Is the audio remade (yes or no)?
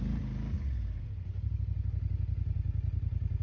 no